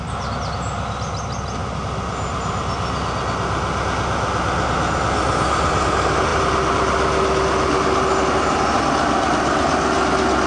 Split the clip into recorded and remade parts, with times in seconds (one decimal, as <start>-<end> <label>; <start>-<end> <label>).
0.0-10.5 recorded